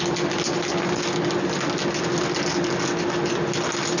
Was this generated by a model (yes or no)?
no